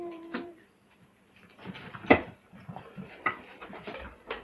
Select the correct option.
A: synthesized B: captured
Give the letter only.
A